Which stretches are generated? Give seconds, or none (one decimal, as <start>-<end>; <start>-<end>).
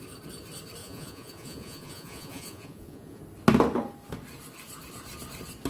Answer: 0.8-3.2